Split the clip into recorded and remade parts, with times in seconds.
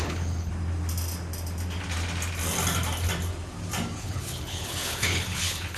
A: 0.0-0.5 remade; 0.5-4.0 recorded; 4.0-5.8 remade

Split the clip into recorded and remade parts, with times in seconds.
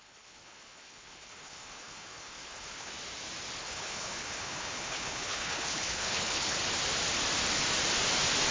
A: 0.0-2.9 remade; 2.9-3.6 recorded; 3.6-6.6 remade; 6.6-8.5 recorded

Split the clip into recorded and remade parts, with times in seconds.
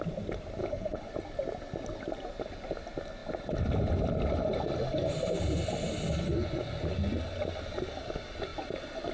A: 0.0-0.6 recorded; 0.6-1.1 remade; 1.1-9.1 recorded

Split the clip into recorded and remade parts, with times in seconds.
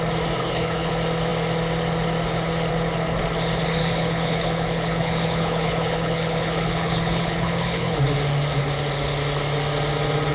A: 0.0-0.4 recorded; 0.4-0.9 remade; 0.9-3.8 recorded; 3.8-8.0 remade; 8.0-10.3 recorded